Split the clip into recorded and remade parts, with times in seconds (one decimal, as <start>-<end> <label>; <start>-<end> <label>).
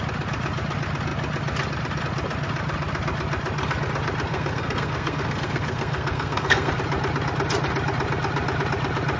0.0-4.3 recorded; 4.3-6.7 remade; 6.7-9.2 recorded